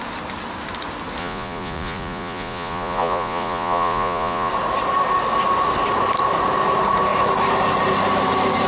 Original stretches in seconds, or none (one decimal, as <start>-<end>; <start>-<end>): 0.0-1.2; 4.5-8.7